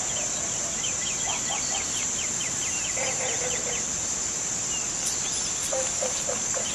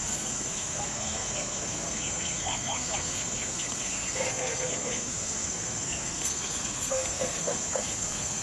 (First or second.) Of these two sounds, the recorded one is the first